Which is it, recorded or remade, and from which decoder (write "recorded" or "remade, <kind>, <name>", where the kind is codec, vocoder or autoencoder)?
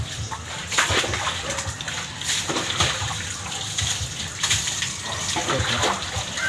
recorded